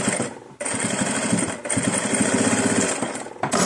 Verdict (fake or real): real